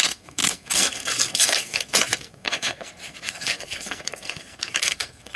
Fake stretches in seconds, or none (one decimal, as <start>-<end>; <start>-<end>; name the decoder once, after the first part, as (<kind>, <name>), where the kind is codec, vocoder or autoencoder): 0.0-5.4 (codec, SNAC)